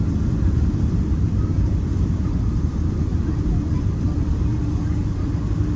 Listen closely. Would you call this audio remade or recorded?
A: remade